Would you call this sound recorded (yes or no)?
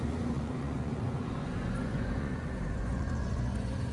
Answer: no